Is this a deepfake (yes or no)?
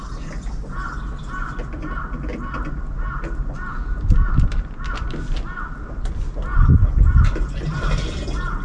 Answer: no